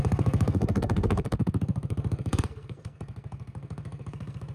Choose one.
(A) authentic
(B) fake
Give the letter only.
B